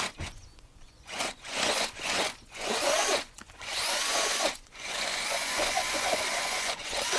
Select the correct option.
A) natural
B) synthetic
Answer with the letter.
B